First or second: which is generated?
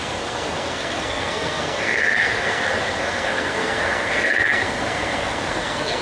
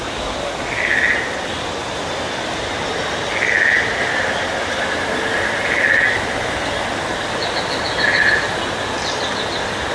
first